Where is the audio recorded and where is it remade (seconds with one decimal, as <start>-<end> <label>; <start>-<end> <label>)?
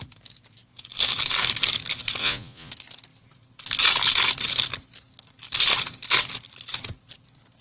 0.0-2.2 recorded; 2.2-2.7 remade; 2.7-7.6 recorded